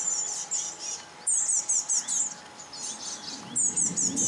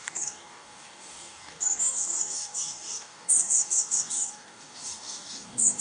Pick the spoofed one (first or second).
second